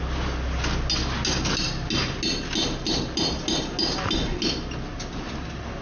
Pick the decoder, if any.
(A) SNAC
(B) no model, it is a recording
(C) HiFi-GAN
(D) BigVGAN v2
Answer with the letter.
B